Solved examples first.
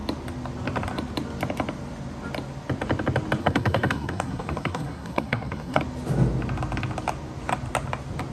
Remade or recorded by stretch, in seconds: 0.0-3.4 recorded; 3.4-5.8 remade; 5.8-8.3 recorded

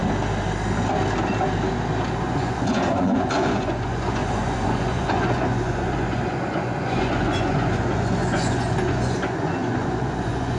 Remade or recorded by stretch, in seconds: 0.0-2.2 recorded; 2.2-10.6 remade

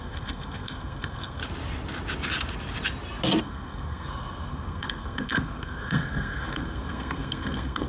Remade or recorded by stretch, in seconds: 0.0-1.4 remade; 1.4-3.4 recorded; 3.4-7.9 remade

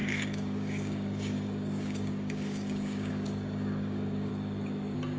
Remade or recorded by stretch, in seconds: 0.0-4.3 remade; 4.3-5.2 recorded